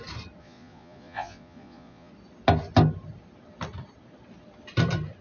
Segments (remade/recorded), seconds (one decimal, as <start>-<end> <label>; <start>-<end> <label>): 0.0-0.4 recorded; 0.4-2.1 remade; 2.1-5.2 recorded